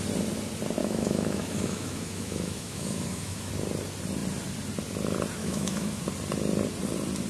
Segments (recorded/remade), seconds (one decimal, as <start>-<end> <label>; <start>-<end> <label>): 0.0-0.8 recorded; 0.8-3.5 remade; 3.5-5.4 recorded; 5.4-6.0 remade; 6.0-7.3 recorded